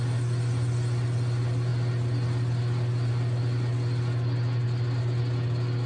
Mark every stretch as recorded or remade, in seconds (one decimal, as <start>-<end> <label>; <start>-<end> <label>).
0.0-5.9 recorded